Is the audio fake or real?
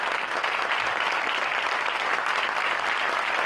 real